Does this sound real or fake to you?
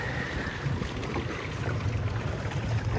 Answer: real